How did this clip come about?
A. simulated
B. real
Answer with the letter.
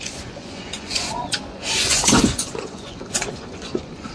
A